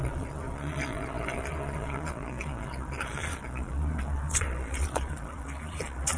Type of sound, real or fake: fake